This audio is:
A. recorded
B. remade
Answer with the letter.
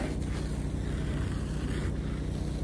A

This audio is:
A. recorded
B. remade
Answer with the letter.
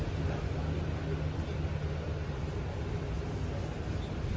A